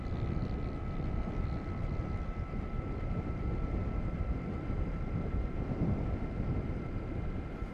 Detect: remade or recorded recorded